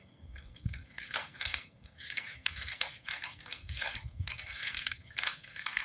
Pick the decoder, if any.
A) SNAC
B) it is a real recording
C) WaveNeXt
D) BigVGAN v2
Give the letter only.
A